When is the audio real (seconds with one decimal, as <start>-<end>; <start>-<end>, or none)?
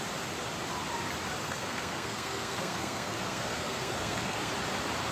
0.0-1.4; 4.5-5.1